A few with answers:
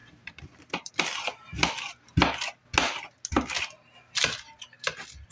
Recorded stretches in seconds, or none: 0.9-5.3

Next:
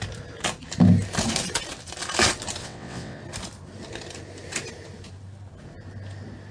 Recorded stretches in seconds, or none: 0.0-2.6; 3.2-6.5

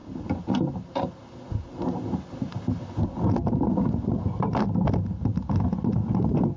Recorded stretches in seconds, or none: 0.0-6.6

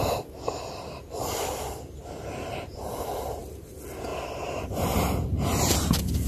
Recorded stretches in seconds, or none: 0.0-2.8; 3.4-6.3